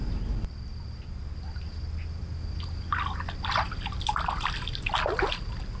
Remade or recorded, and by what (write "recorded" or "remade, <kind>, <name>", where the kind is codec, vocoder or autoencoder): recorded